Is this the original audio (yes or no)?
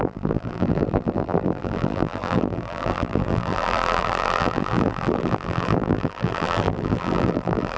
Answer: no